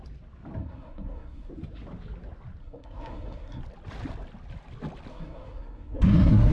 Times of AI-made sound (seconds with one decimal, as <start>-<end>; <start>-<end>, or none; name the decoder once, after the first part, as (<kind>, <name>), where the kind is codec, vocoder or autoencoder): 0.6-1.5 (codec, SNAC); 2.6-3.6; 5.1-6.5